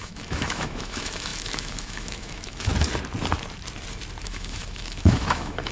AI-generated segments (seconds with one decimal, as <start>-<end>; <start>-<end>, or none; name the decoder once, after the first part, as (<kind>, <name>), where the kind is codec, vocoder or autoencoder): 0.0-2.7 (autoencoder, DAC-VAE); 4.2-5.7